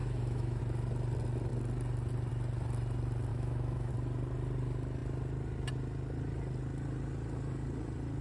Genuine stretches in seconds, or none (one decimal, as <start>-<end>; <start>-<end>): 0.6-3.3; 3.9-8.2